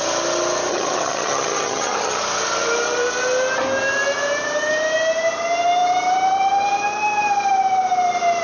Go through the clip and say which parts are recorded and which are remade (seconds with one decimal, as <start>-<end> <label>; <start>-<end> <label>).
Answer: 0.0-0.7 recorded; 0.7-2.2 remade; 2.2-8.4 recorded